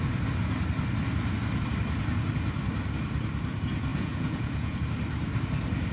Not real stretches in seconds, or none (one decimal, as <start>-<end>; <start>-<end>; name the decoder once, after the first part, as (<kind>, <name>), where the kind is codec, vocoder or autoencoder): 3.9-4.8 (vocoder, Vocos)